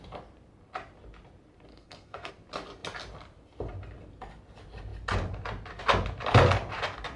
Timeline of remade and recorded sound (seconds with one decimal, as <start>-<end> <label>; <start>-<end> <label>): 0.0-1.7 recorded; 1.7-2.3 remade; 2.3-7.2 recorded